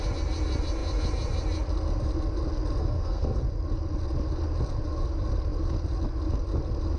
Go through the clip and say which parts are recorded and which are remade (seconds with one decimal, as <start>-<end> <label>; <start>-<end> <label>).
0.0-2.8 recorded; 2.8-3.4 remade; 3.4-7.0 recorded